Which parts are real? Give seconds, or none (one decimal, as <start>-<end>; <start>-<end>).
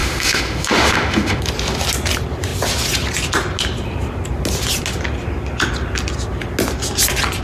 1.4-7.4